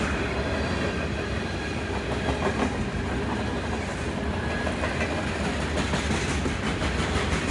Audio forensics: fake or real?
real